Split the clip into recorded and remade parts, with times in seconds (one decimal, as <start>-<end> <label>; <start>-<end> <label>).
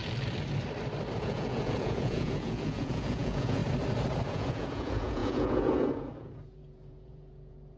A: 0.0-1.2 recorded; 1.2-3.6 remade; 3.6-4.3 recorded; 4.3-7.8 remade